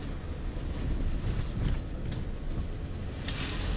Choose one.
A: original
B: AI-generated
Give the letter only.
A